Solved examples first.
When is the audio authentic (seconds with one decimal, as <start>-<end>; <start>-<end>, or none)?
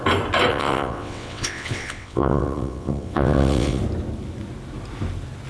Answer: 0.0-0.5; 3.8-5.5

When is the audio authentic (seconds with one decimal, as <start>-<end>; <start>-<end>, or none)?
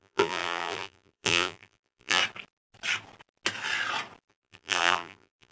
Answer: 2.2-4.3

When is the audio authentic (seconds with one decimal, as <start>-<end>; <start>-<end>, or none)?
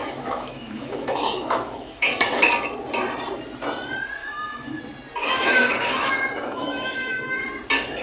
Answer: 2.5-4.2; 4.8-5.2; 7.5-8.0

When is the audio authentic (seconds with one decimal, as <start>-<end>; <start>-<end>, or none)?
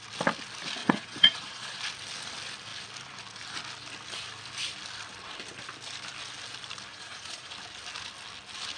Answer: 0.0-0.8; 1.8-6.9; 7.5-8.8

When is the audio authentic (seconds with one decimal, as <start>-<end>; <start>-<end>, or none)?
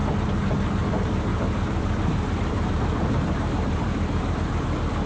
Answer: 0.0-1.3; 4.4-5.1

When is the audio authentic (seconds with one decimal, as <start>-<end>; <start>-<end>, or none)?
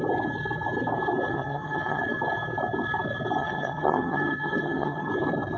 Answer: 0.0-1.3; 2.0-3.4; 5.1-5.6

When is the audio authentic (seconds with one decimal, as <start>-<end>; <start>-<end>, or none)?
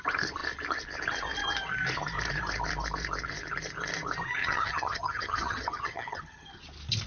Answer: 0.0-4.4; 6.6-7.1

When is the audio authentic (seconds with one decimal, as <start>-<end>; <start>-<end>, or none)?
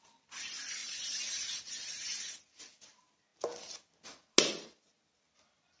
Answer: 0.0-0.8; 2.4-5.8